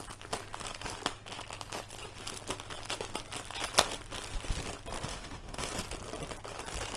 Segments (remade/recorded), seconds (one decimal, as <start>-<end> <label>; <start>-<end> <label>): 0.0-5.1 recorded; 5.1-5.7 remade; 5.7-7.0 recorded